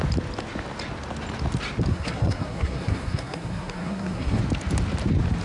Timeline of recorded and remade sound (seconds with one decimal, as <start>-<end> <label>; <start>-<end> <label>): 0.0-1.9 recorded; 1.9-4.4 remade; 4.4-5.4 recorded